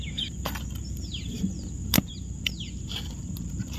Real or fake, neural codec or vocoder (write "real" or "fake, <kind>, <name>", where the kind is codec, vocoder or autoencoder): fake, vocoder, BigVGAN v2